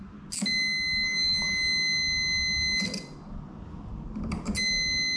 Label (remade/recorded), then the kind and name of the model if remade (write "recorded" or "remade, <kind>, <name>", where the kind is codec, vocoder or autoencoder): recorded